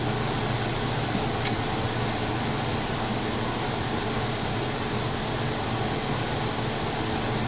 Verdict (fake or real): real